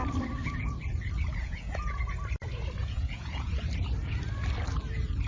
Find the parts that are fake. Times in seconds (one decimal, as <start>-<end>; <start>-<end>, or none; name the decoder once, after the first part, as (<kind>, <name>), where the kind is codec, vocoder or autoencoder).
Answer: 1.4-2.0 (vocoder, Vocos); 2.8-3.5